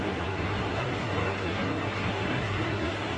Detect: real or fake fake